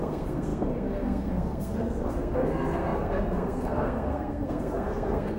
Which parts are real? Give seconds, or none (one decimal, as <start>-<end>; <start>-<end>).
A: none